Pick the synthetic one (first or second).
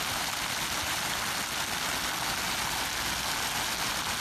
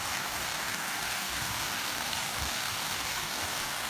second